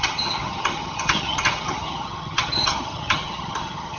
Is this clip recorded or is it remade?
remade